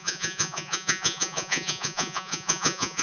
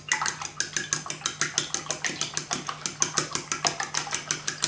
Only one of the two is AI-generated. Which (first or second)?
first